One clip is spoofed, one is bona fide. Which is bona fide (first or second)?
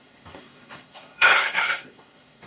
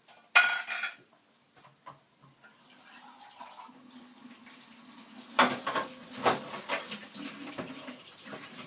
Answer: second